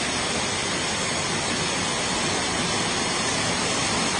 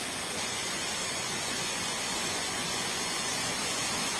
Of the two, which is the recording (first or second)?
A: first